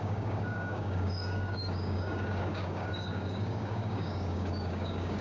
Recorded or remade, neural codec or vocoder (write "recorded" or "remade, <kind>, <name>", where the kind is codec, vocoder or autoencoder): remade, codec, DAC